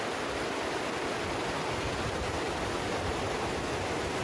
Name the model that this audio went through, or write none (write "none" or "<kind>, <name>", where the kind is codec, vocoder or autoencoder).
none